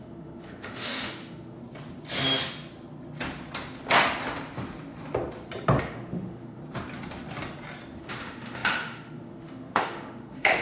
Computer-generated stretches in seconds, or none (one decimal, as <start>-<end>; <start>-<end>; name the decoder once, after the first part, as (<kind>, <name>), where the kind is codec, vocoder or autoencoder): 0.0-1.6 (autoencoder, DAC-VAE); 5.8-6.6; 8.0-10.6